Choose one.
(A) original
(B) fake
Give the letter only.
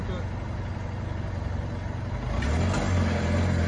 A